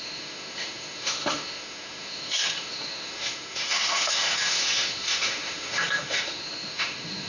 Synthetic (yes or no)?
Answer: yes